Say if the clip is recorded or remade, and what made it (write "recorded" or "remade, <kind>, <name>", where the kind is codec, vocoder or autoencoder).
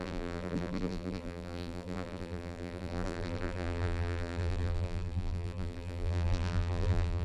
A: remade, vocoder, BigVGAN v2